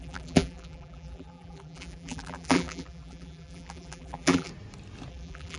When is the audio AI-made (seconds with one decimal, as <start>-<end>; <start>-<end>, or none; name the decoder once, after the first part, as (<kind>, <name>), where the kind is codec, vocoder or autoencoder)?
0.0-4.5 (vocoder, BigVGAN v2); 5.1-5.6